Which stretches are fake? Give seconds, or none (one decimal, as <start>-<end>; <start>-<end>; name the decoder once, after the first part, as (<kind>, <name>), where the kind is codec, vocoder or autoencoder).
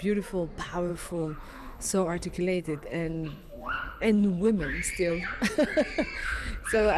0.9-5.1 (codec, HILCodec); 6.2-7.0